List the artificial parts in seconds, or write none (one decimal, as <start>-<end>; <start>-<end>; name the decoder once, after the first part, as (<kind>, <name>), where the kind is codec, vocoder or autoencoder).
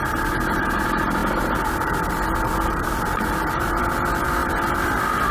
1.2-3.8 (vocoder, BigVGAN v2); 4.4-5.3